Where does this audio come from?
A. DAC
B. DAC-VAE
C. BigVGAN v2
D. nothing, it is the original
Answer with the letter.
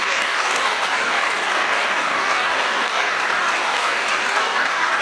A